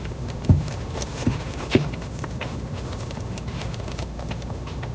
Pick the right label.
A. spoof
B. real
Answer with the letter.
A